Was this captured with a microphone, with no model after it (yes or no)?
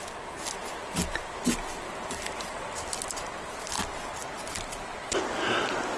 yes